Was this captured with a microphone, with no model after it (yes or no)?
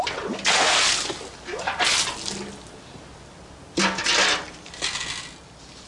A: yes